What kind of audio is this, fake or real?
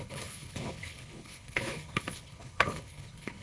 fake